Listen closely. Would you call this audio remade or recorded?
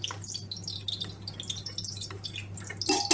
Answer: recorded